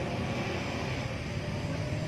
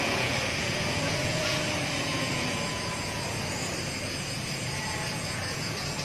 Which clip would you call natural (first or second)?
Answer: first